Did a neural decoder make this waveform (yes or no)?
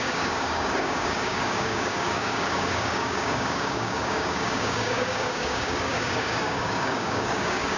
yes